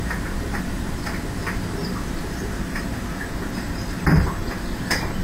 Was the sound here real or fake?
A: fake